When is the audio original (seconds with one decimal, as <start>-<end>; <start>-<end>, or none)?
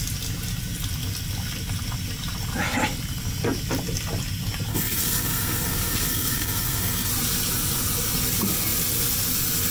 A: 0.0-4.7; 7.1-9.7